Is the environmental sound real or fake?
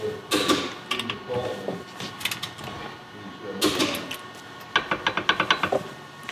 real